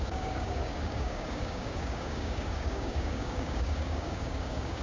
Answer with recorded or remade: remade